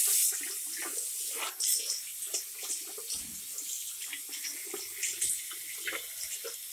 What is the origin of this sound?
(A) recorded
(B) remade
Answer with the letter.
A